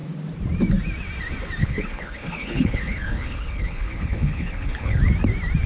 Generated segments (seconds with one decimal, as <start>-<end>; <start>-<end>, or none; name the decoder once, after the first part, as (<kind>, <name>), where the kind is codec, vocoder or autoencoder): 1.6-5.0 (codec, HILCodec)